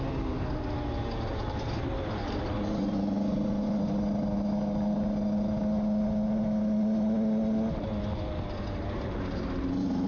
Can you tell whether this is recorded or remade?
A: recorded